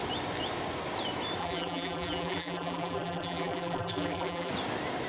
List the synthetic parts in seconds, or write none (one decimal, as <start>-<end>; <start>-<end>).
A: 1.4-4.5